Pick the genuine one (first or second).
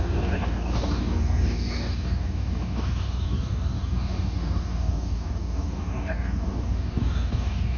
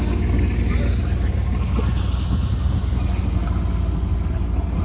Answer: second